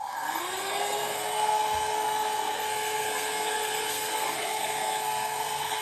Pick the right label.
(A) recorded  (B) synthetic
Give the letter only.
B